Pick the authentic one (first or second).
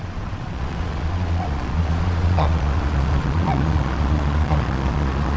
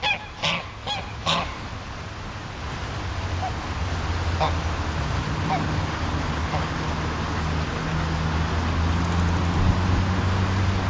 second